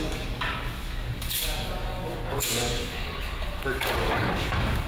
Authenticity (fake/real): fake